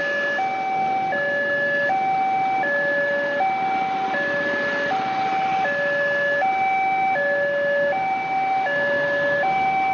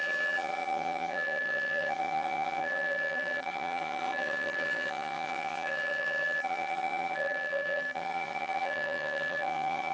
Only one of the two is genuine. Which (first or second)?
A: first